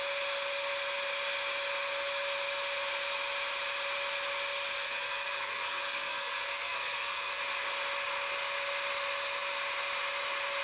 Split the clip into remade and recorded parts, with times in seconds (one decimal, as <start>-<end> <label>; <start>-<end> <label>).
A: 0.0-4.8 recorded; 4.8-7.4 remade; 7.4-10.6 recorded

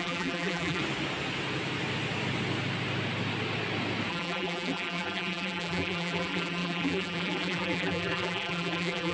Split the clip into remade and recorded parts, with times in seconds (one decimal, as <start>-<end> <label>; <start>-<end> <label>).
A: 0.0-0.8 remade; 0.8-4.1 recorded; 4.1-9.1 remade

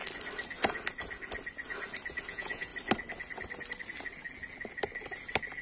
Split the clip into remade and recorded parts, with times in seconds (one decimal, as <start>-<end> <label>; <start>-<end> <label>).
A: 0.0-2.3 recorded; 2.3-2.7 remade; 2.7-5.6 recorded

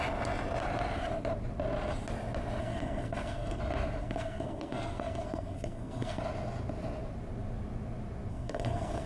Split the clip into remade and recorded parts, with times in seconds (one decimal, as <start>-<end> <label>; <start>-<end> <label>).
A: 0.0-2.6 recorded; 2.6-3.6 remade; 3.6-4.0 recorded; 4.0-6.2 remade; 6.2-8.3 recorded; 8.3-9.1 remade

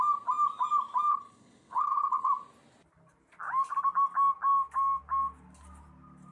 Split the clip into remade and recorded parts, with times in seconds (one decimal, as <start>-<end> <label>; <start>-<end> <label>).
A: 0.0-1.1 recorded; 1.1-2.3 remade; 2.3-6.3 recorded